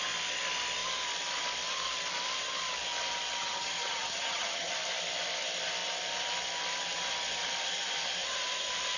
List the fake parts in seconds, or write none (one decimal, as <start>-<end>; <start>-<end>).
3.4-4.7